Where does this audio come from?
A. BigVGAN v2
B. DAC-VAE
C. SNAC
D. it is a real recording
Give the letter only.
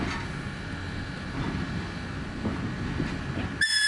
D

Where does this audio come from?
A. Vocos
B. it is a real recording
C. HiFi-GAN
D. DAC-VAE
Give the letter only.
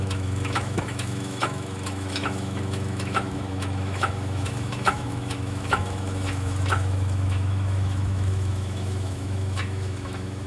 D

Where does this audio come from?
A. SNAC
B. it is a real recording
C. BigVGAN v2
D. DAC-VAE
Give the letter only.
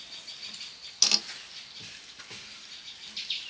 B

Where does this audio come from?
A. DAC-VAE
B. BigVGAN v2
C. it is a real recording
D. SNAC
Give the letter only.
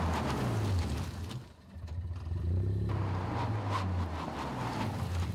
C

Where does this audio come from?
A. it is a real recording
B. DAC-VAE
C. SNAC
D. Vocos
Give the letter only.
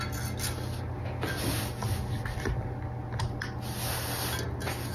A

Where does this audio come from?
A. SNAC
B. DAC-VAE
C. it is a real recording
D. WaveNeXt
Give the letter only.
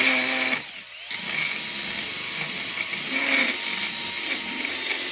C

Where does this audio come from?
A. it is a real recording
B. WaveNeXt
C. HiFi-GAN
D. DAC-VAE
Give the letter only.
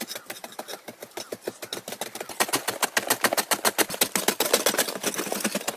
A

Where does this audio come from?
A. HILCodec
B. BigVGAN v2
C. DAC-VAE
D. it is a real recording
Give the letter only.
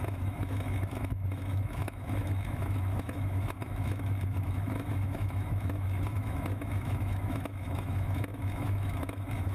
C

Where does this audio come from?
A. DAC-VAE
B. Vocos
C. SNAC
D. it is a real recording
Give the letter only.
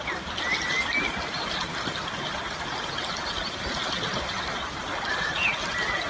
D